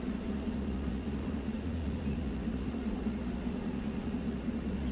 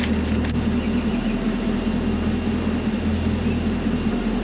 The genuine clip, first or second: second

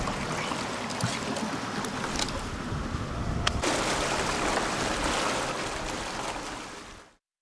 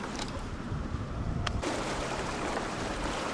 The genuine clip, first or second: first